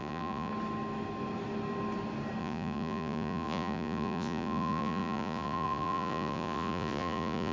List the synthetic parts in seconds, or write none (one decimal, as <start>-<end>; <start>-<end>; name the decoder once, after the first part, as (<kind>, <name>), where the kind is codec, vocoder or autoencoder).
0.0-0.5 (vocoder, Vocos); 2.4-7.5